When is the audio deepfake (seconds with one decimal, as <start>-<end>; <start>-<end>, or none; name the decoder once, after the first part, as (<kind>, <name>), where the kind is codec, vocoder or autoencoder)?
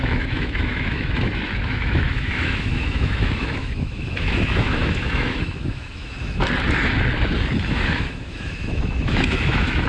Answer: 0.0-6.4 (autoencoder, DAC-VAE); 7.7-9.9